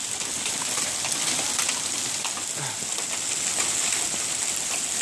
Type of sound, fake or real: real